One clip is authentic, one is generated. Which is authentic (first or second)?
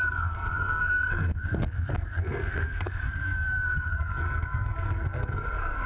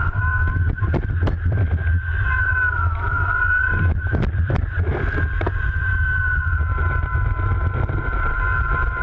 second